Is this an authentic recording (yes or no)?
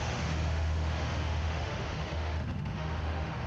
no